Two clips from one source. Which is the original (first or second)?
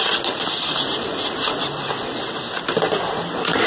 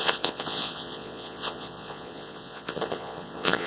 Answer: first